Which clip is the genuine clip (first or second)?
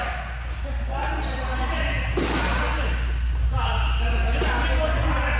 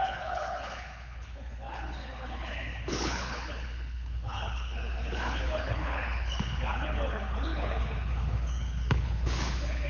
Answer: first